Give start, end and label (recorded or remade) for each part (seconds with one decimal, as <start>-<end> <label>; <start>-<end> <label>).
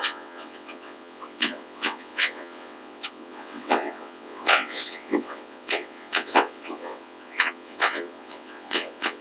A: 0.0-9.2 remade